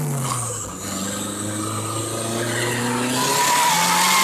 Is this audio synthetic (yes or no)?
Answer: no